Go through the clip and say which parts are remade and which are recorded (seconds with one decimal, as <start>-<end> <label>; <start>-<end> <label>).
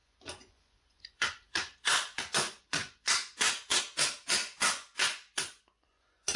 0.0-3.8 remade; 3.8-4.4 recorded; 4.4-6.4 remade